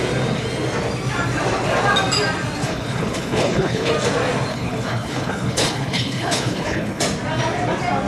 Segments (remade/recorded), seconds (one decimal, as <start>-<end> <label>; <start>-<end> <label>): 0.0-2.6 recorded; 2.6-3.9 remade; 3.9-4.5 recorded; 4.5-7.0 remade; 7.0-8.1 recorded